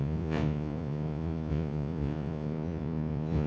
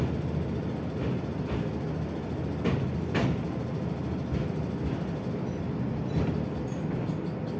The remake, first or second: first